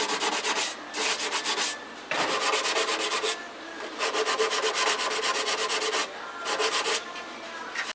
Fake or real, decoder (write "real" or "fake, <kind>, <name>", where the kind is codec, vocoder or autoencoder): real